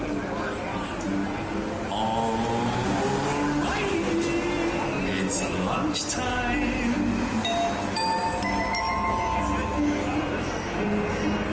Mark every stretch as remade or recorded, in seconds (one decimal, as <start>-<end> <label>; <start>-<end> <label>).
0.0-11.5 recorded